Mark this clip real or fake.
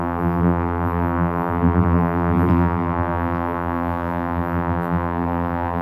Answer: fake